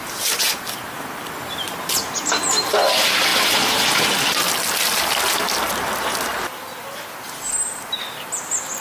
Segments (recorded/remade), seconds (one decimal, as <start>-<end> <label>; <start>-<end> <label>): 0.0-2.0 recorded; 2.0-2.5 remade; 2.5-8.8 recorded